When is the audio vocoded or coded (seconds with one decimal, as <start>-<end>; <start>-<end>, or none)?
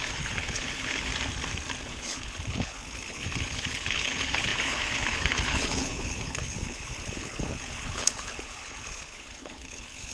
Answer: 0.0-1.1; 1.8-10.1